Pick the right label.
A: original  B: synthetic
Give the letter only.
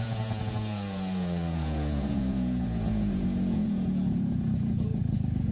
B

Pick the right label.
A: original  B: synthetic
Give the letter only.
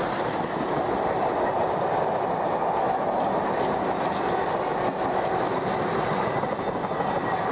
A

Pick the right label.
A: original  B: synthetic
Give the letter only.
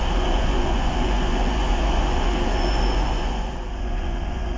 B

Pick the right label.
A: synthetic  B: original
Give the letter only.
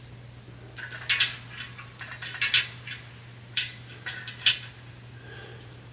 B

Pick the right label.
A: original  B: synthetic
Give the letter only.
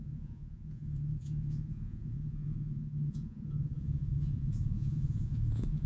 B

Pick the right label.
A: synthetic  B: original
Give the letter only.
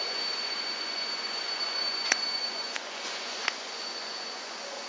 A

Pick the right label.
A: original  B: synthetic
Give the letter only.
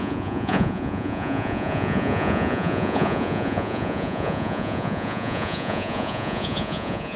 B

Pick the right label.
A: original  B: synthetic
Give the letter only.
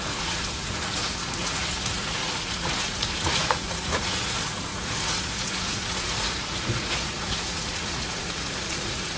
B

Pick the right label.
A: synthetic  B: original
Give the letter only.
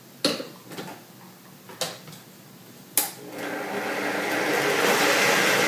B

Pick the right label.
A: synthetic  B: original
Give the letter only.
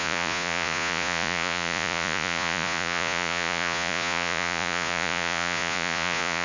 A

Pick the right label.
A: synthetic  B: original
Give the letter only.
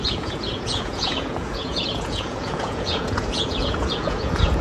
A